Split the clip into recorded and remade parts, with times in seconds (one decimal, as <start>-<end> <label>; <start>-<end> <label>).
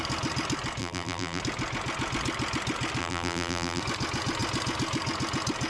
0.0-0.8 recorded; 0.8-1.4 remade; 1.4-3.0 recorded; 3.0-3.8 remade; 3.8-5.7 recorded